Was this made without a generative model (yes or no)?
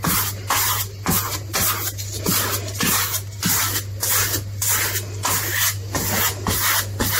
yes